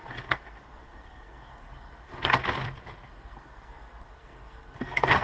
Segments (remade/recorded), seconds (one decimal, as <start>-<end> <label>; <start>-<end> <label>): 0.0-2.4 remade; 2.4-3.1 recorded; 3.1-5.2 remade